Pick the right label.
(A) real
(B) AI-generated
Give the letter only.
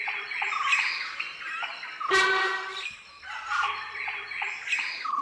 A